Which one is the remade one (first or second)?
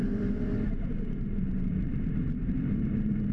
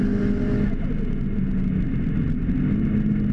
first